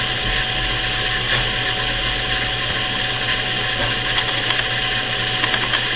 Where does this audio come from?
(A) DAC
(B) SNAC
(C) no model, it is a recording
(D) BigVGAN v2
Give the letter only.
C